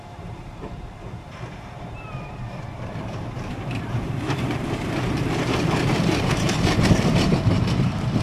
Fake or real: fake